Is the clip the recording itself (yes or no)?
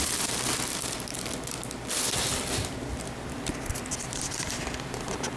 yes